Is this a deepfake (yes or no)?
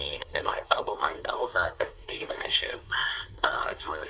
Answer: yes